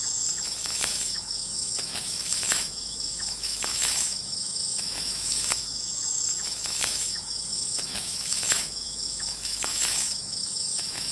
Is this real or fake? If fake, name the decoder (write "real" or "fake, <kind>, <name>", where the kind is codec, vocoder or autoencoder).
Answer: fake, autoencoder, DAC-VAE